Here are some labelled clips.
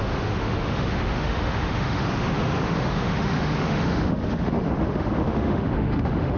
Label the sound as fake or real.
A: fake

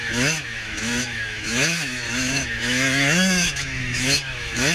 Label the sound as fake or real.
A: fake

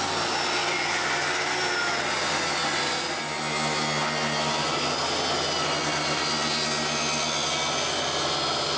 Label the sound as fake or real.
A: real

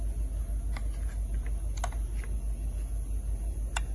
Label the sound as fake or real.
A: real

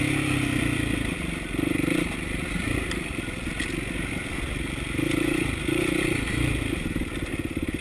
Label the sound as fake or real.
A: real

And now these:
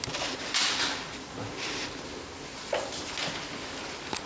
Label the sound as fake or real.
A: real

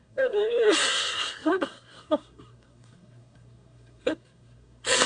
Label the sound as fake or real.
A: fake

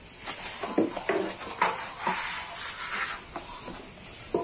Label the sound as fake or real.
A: real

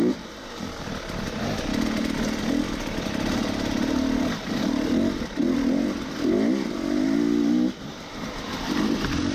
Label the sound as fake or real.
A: real